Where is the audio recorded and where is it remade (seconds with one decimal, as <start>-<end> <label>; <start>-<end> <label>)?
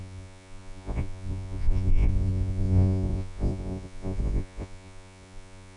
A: 0.0-5.8 remade